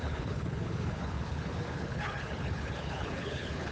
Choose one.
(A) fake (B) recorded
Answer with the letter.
A